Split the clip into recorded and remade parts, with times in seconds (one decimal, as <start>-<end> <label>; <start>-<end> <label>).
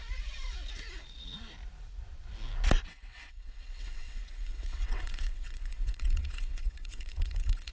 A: 0.0-2.9 recorded; 2.9-7.7 remade